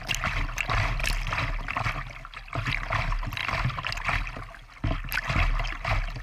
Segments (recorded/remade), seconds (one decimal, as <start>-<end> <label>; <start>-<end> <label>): 0.0-6.2 recorded

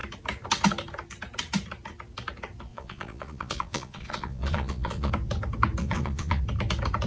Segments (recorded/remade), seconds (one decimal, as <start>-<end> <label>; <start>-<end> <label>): 0.0-2.7 recorded; 2.7-5.1 remade; 5.1-5.8 recorded; 5.8-6.4 remade; 6.4-7.1 recorded

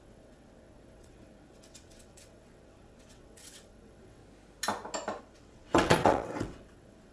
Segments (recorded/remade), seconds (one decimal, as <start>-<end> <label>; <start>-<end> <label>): 0.0-4.2 remade; 4.2-5.2 recorded; 5.2-7.1 remade

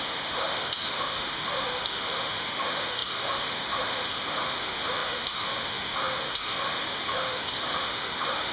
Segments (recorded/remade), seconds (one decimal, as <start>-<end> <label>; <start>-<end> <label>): 0.0-8.5 remade

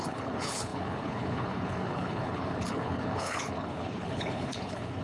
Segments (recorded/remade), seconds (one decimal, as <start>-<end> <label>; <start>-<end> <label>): 0.0-5.0 remade

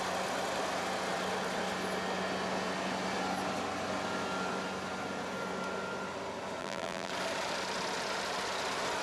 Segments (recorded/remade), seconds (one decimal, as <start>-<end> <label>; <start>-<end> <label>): 0.0-6.6 recorded; 6.6-7.1 remade; 7.1-9.0 recorded